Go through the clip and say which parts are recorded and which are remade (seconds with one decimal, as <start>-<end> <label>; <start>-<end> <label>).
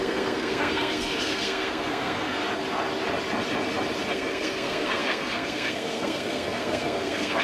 0.0-2.4 remade; 2.4-4.1 recorded; 4.1-7.4 remade